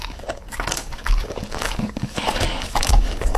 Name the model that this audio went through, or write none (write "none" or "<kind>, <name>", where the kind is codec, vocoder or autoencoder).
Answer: codec, DAC